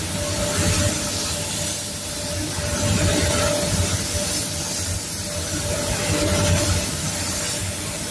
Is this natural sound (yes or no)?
yes